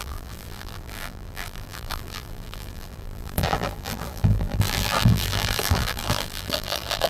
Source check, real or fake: fake